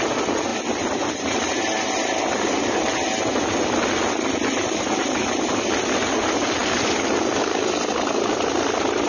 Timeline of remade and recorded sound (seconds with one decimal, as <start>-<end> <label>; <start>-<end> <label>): 0.0-9.1 recorded